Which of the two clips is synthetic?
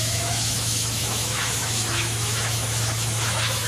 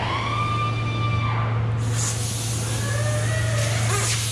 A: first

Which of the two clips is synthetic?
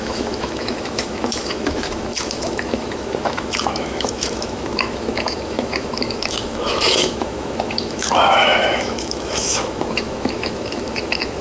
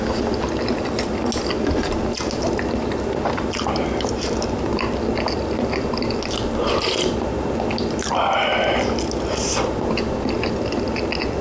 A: first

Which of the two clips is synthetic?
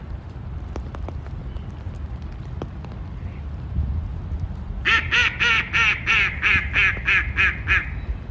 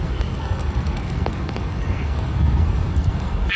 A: second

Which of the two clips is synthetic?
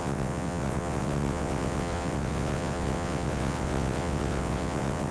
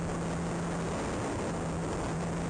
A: first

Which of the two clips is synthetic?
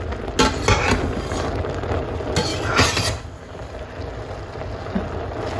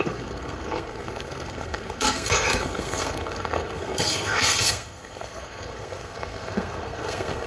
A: second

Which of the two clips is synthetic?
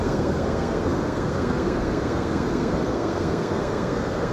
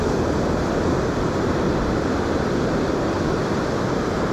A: first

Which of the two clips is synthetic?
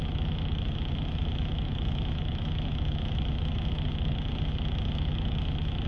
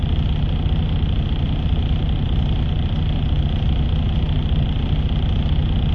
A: first